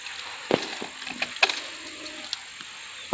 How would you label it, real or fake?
real